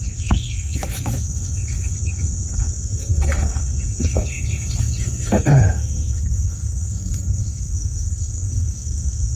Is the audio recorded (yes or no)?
no